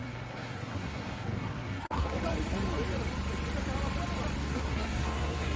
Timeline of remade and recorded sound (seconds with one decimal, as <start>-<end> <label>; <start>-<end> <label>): 0.0-2.2 remade; 2.2-4.4 recorded; 4.4-5.6 remade